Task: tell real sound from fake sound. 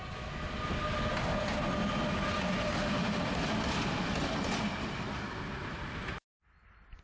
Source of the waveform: real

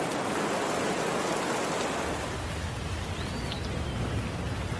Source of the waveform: real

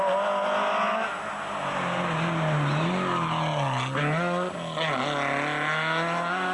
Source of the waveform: real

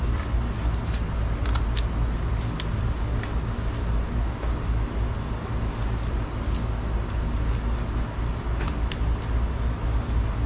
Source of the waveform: real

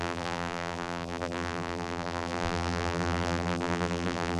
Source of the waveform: fake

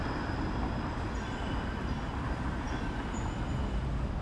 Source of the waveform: real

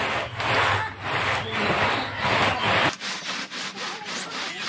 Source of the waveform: real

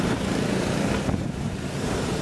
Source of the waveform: fake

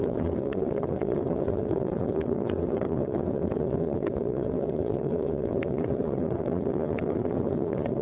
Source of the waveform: fake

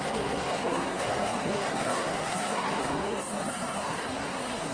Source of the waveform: fake